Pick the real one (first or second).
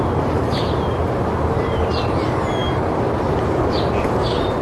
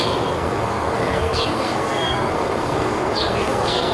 first